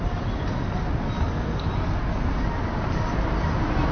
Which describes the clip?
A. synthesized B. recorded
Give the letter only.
B